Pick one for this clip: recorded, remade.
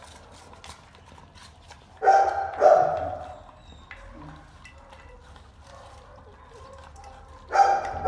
recorded